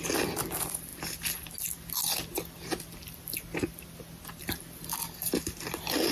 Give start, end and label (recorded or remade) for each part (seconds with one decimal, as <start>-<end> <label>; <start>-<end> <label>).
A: 0.0-6.1 recorded